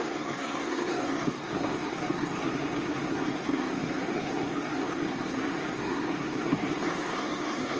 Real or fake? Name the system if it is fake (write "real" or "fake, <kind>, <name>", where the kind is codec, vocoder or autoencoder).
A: fake, codec, SNAC